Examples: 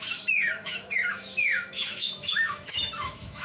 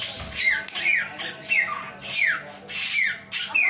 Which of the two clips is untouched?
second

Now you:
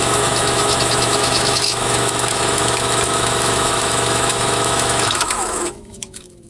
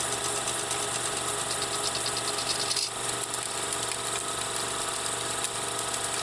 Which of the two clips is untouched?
second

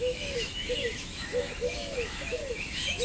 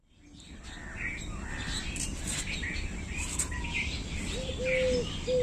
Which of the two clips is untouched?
second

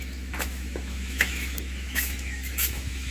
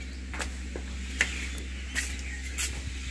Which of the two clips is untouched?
second